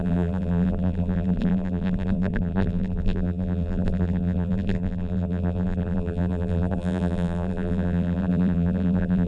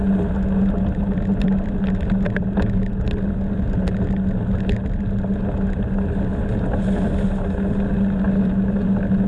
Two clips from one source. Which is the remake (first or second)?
first